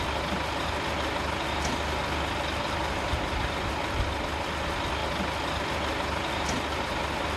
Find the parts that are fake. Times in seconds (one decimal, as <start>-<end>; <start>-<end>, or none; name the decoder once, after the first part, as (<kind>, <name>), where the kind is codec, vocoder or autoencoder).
none